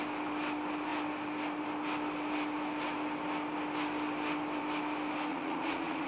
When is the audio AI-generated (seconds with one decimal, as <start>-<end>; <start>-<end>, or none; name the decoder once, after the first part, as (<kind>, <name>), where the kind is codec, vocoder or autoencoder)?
5.3-6.1 (vocoder, Vocos)